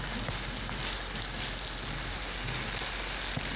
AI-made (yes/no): no